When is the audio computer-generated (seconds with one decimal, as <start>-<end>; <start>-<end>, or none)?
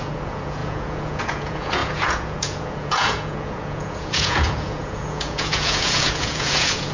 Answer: 0.0-6.9